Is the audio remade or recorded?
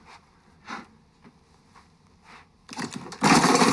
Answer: recorded